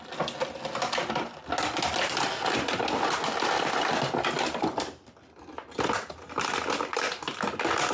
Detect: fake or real real